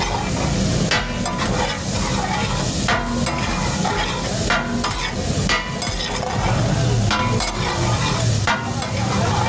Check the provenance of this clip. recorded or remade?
recorded